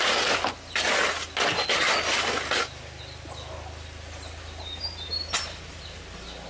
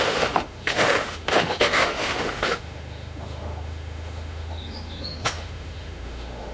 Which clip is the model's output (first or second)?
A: second